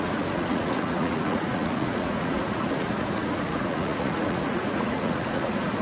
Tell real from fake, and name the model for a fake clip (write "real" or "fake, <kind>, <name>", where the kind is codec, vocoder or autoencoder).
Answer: fake, vocoder, Vocos